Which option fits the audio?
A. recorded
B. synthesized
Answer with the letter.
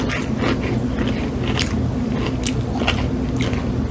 A